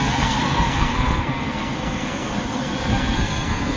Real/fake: fake